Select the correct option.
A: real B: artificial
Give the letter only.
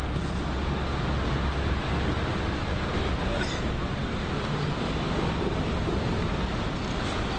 A